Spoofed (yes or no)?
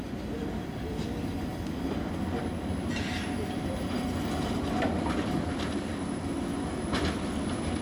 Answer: no